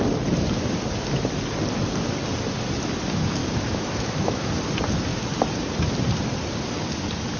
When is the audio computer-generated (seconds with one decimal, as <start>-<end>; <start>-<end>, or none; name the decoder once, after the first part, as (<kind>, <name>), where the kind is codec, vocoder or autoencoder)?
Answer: 3.4-4.5 (autoencoder, DAC-VAE)